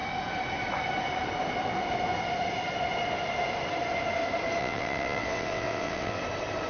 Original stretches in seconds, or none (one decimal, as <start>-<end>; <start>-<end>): 0.0-4.6; 6.2-6.7